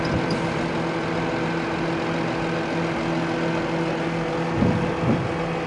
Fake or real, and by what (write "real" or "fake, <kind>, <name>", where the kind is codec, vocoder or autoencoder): real